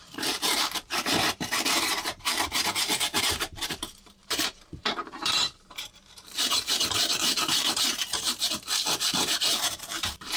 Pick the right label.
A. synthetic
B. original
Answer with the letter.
A